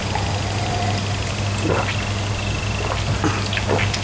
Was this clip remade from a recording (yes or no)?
no